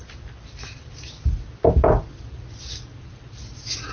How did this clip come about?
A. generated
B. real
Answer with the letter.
B